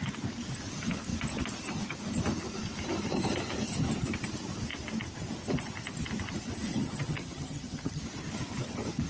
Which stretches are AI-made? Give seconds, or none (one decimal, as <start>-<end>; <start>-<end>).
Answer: 6.7-8.0